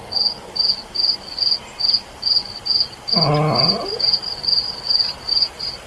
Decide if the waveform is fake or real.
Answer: real